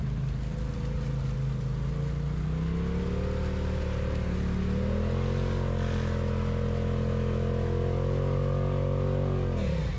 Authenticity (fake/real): real